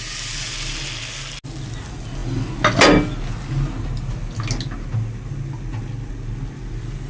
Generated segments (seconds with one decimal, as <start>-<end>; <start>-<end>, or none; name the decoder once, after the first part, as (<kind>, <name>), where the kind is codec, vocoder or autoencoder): none